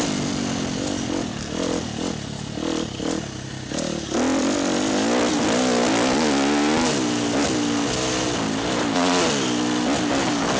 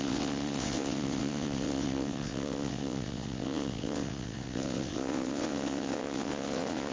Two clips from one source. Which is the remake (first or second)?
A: second